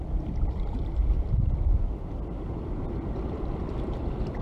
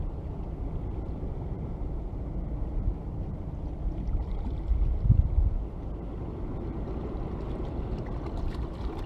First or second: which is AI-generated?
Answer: first